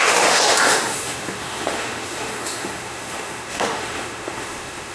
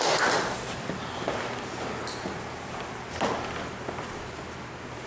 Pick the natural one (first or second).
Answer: second